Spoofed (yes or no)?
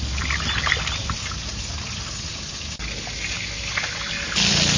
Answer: no